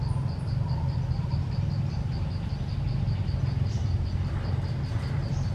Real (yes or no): yes